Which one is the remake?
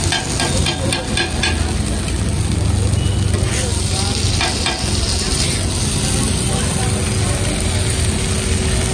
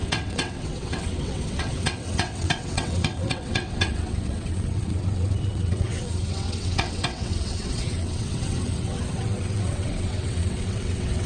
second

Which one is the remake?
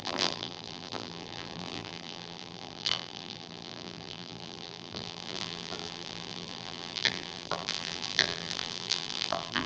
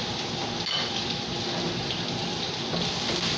first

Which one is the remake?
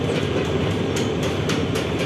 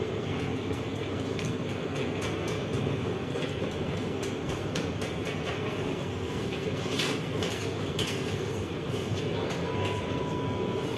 second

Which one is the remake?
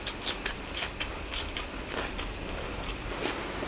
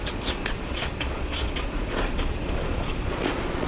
second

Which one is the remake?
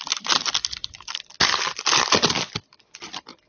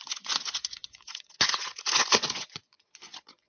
second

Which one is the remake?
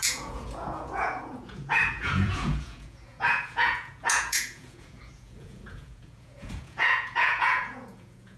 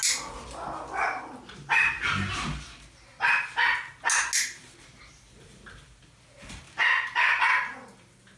first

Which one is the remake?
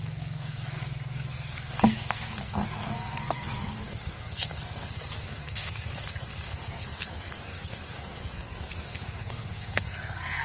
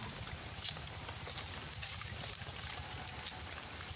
first